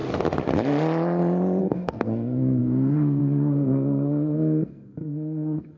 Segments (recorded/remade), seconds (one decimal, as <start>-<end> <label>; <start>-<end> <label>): 0.0-1.6 recorded; 1.6-5.8 remade